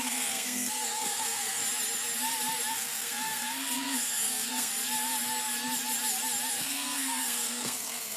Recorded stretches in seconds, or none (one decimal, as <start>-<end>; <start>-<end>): 1.6-2.7; 4.7-6.5